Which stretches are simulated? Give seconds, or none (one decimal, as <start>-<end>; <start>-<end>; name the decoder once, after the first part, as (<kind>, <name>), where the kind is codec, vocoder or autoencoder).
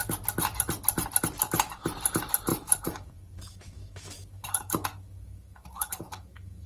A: 2.5-6.7 (autoencoder, DAC-VAE)